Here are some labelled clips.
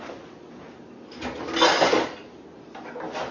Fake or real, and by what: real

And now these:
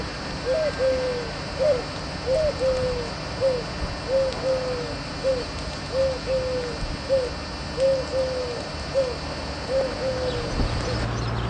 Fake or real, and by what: real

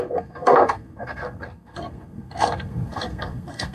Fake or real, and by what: fake, codec, SNAC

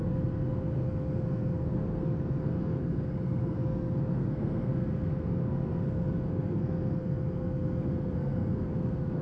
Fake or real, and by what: fake, codec, SNAC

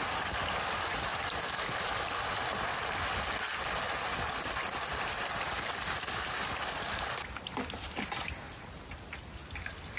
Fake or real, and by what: real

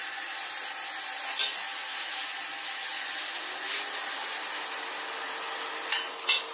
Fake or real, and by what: real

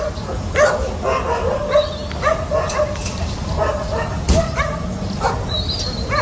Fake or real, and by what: real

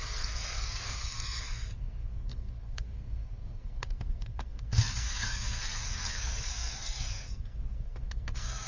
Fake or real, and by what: fake, codec, SNAC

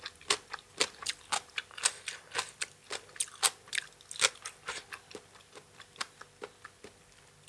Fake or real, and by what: real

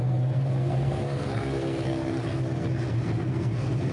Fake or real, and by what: fake, codec, SNAC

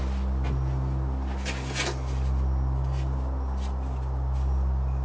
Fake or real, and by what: real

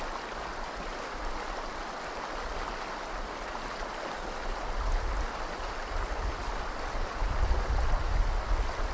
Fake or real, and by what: real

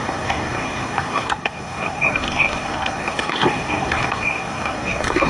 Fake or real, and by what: fake, codec, SNAC